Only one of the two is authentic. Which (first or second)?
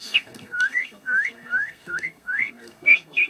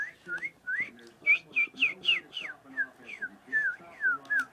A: second